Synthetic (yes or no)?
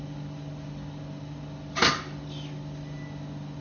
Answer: no